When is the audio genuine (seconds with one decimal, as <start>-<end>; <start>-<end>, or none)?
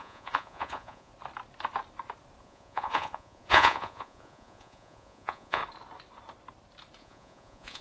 1.1-2.4; 5.6-7.0